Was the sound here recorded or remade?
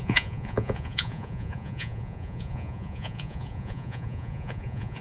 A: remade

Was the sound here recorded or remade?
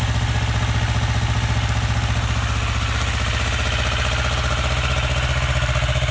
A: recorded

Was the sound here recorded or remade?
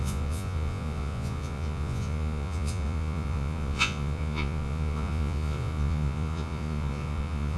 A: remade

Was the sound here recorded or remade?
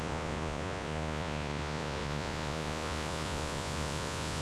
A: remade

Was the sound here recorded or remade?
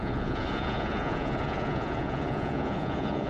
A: remade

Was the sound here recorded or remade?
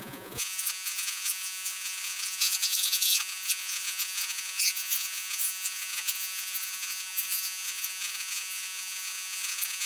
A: remade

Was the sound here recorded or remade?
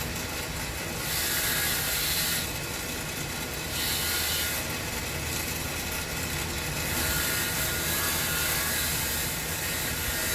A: recorded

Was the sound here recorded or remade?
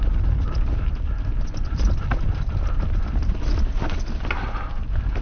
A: recorded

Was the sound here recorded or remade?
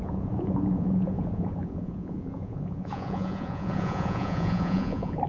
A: remade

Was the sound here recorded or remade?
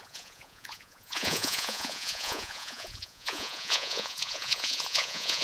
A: remade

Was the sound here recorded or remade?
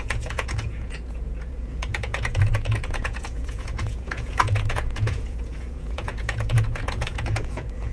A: remade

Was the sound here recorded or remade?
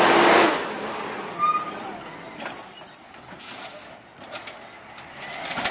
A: recorded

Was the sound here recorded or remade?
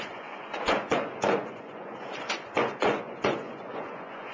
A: remade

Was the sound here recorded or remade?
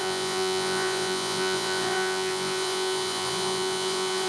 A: remade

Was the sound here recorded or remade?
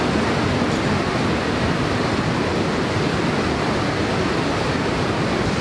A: recorded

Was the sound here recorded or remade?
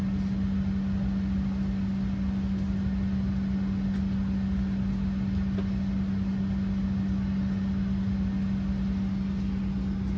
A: recorded